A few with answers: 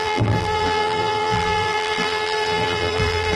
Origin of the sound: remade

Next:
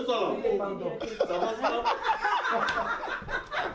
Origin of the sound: recorded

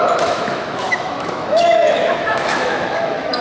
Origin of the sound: remade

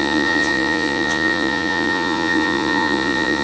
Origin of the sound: remade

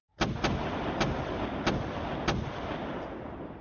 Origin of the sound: recorded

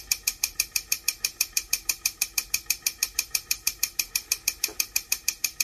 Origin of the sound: remade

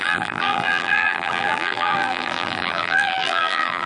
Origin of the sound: remade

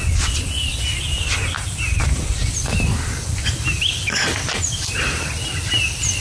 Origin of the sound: recorded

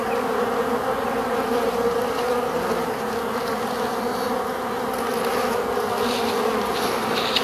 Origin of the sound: recorded